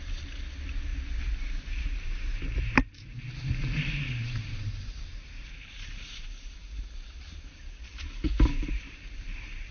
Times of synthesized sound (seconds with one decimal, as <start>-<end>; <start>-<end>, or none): 0.0-9.7